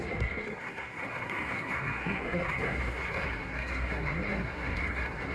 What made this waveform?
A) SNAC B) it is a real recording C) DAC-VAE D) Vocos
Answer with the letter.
A